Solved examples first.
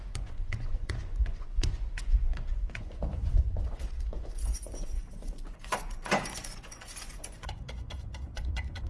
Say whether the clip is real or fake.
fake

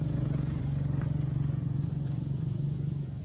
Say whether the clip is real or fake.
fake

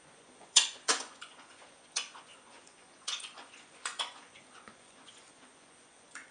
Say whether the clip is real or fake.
fake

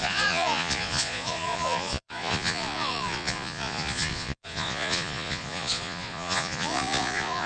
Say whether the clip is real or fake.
fake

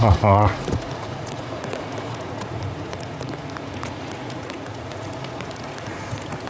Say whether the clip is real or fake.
fake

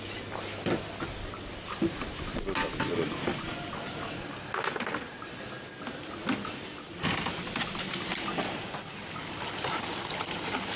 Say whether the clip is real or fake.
real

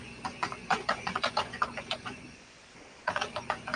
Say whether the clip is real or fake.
fake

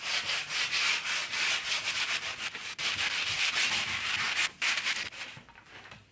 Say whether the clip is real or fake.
real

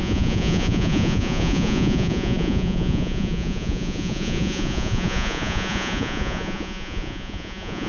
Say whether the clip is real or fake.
fake